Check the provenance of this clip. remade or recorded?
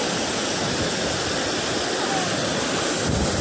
recorded